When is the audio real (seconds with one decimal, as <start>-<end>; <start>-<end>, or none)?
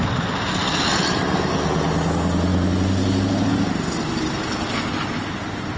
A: 0.0-5.8